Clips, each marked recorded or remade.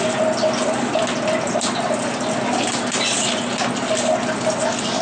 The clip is recorded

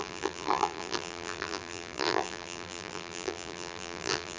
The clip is remade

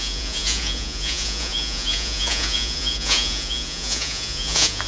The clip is remade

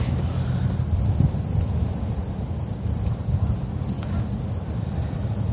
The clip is recorded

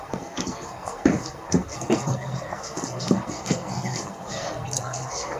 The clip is remade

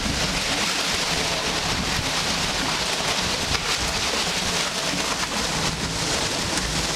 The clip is recorded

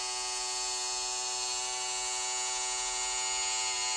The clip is recorded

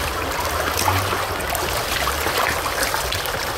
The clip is recorded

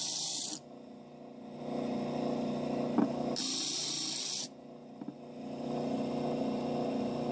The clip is recorded